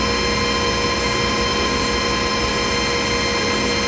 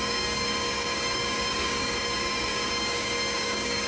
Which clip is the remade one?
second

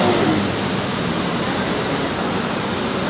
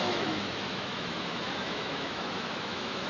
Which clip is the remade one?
second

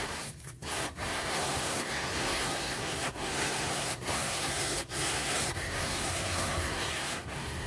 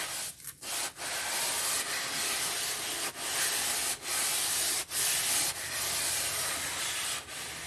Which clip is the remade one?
first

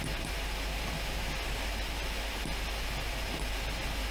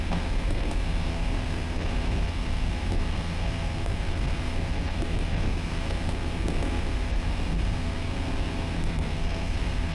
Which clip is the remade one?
second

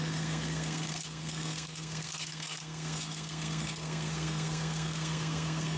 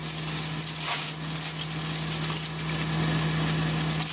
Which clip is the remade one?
first